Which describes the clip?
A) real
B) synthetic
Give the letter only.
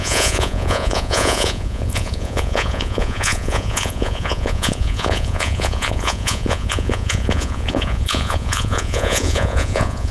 B